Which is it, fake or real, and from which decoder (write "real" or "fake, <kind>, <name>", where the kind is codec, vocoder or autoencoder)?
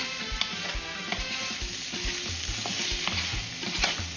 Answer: real